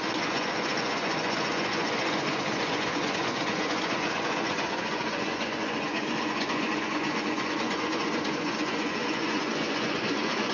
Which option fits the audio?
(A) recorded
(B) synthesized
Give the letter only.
B